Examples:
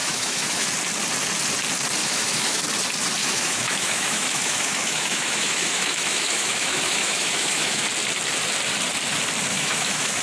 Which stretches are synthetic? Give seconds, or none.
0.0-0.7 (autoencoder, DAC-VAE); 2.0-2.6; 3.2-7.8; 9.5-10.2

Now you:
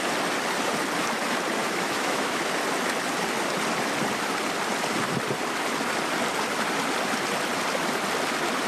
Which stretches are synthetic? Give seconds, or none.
1.6-2.4 (autoencoder, DAC-VAE)